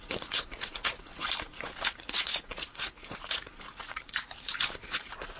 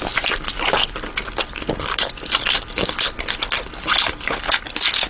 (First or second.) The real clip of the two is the second